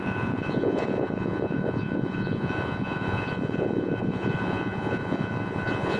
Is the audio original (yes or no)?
no